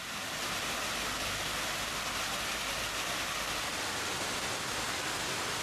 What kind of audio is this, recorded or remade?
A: recorded